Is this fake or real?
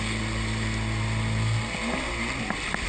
real